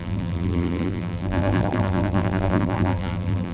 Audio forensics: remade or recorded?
remade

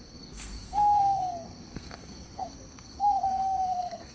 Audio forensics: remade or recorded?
remade